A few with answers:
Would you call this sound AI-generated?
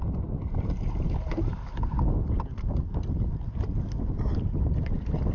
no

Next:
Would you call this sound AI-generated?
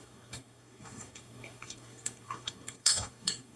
yes